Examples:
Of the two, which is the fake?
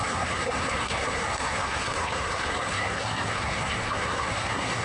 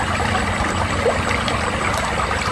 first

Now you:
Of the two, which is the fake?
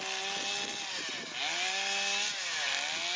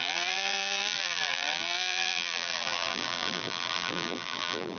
second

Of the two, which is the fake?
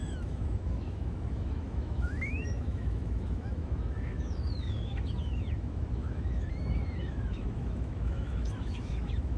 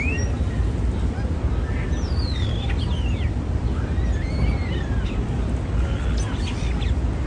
first